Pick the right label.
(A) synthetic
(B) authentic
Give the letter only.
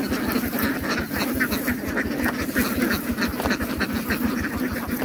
B